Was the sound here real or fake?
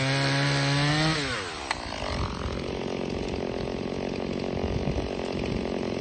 real